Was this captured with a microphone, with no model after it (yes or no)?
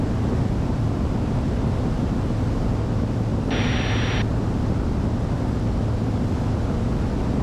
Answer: yes